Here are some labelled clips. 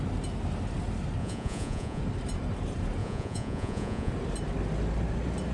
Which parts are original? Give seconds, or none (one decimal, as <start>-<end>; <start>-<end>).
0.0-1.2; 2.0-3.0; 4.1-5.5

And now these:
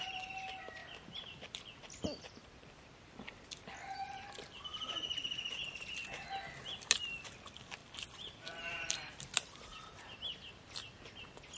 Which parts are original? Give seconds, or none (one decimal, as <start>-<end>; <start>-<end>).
0.0-0.8; 3.1-7.8; 10.2-11.6

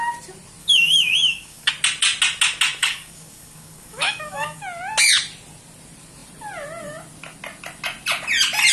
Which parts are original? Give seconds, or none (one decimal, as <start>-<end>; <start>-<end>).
0.0-0.6; 1.7-2.8; 4.6-8.7

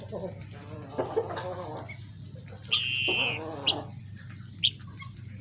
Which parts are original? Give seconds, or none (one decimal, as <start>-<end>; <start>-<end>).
0.0-5.4